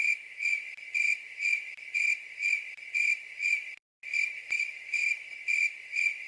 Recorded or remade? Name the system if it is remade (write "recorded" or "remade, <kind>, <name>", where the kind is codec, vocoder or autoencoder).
remade, vocoder, BigVGAN v2